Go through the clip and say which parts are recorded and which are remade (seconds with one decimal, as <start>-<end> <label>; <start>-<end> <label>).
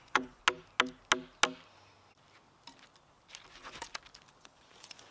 0.0-0.4 remade; 0.4-3.5 recorded; 3.5-3.9 remade; 3.9-4.4 recorded; 4.4-5.1 remade